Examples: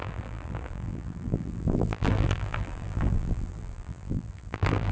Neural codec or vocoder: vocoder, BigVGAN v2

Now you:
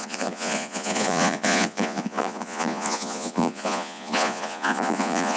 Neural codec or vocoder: vocoder, Vocos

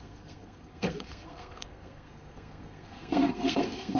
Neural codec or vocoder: codec, SNAC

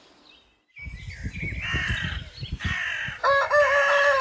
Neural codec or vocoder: none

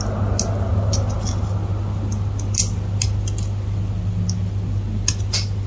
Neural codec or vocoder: none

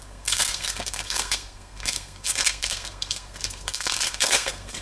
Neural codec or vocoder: codec, SNAC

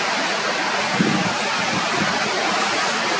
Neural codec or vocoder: none